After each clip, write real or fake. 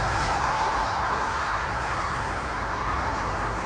fake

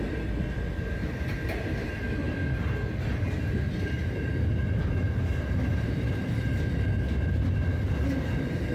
real